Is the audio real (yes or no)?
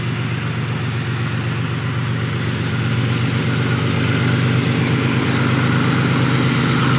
yes